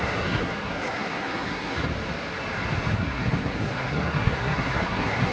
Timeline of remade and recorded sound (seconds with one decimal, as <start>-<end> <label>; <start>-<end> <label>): 0.0-1.9 remade; 1.9-2.9 recorded; 2.9-5.3 remade